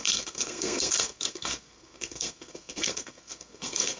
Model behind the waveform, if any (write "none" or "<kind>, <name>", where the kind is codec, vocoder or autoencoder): codec, SNAC